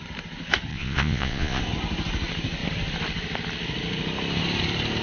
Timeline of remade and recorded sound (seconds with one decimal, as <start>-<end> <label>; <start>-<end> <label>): 0.0-0.7 recorded; 0.7-1.6 remade; 1.6-5.0 recorded